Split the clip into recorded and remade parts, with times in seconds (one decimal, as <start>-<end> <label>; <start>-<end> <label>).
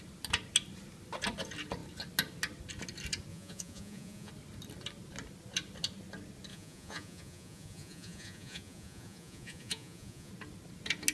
0.0-3.3 recorded; 3.3-4.3 remade; 4.3-6.5 recorded; 6.5-10.3 remade; 10.3-11.1 recorded